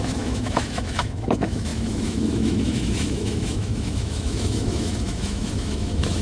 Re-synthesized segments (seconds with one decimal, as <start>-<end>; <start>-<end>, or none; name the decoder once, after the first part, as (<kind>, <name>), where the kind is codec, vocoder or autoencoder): 0.0-6.2 (autoencoder, DAC-VAE)